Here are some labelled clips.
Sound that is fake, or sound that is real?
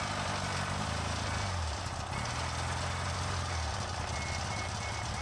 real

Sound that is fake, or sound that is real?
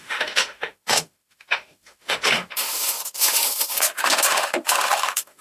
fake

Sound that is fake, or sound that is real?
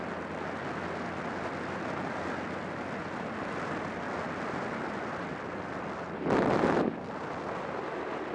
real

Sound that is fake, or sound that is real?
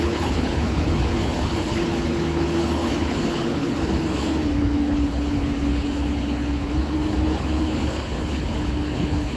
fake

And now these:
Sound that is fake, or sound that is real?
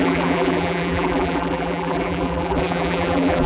fake